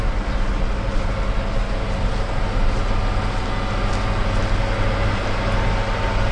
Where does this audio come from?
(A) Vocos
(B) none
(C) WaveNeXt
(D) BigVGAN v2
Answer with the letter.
B